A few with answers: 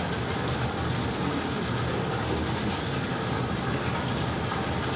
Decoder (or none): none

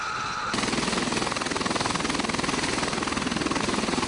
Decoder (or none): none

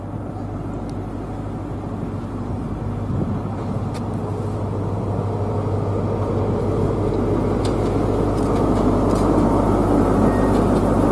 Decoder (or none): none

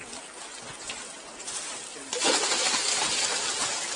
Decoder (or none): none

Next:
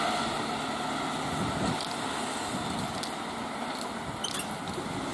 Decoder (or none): none